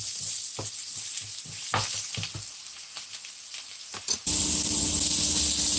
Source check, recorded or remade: recorded